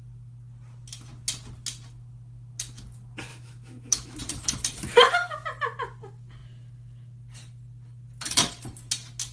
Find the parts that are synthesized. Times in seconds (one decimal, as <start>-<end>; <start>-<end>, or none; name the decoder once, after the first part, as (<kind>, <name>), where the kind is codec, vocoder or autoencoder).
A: 3.3-4.2 (autoencoder, DAC-VAE)